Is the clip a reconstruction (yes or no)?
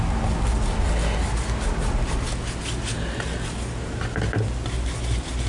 no